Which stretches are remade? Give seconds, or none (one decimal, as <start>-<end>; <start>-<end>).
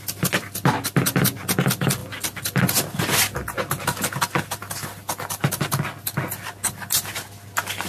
4.6-5.6